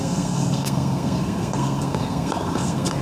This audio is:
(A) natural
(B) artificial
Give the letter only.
B